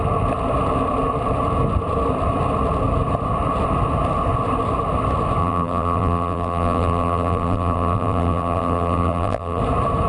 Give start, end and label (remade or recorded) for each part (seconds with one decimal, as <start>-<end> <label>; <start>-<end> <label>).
0.0-5.4 recorded; 5.4-9.6 remade; 9.6-10.1 recorded